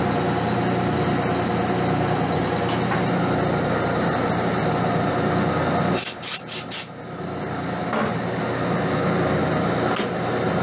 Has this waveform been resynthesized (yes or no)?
no